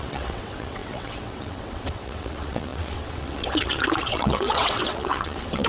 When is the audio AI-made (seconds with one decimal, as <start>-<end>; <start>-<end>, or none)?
0.0-5.7

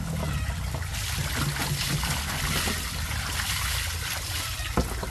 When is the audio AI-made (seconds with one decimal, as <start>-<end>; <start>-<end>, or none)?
none

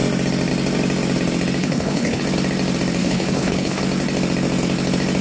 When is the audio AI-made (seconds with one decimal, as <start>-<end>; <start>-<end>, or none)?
1.6-2.2; 3.0-3.8

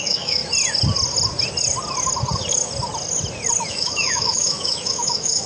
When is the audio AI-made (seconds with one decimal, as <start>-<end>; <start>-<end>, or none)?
0.0-0.4; 3.7-5.5

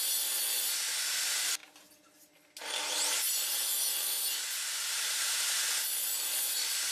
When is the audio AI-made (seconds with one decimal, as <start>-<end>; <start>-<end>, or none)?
none

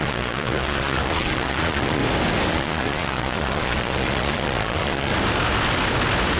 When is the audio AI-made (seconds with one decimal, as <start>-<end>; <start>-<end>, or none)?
0.0-2.0; 2.5-5.1

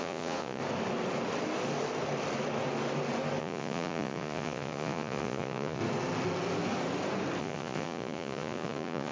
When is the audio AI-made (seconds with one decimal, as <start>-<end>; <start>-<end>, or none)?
0.0-0.6; 3.4-5.8; 7.4-9.1